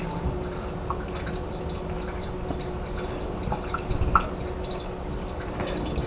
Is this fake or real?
real